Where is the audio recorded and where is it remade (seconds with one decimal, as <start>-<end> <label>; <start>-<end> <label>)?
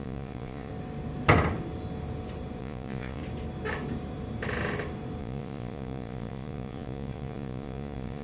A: 0.0-0.7 remade; 0.7-2.6 recorded; 2.6-3.2 remade; 3.2-5.2 recorded; 5.2-8.2 remade